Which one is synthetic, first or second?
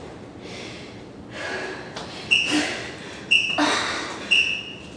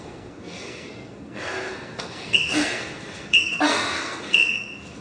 second